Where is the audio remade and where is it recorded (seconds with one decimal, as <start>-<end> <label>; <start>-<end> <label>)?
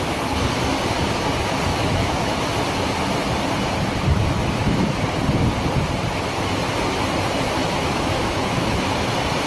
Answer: 0.0-1.7 recorded; 1.7-2.6 remade; 2.6-4.1 recorded; 4.1-5.0 remade; 5.0-7.6 recorded; 7.6-8.8 remade; 8.8-9.5 recorded